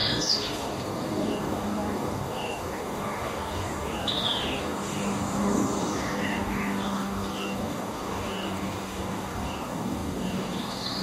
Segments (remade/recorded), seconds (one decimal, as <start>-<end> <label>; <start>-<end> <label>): 0.0-11.0 remade